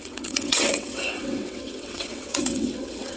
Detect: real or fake fake